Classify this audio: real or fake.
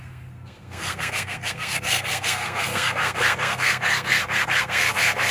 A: fake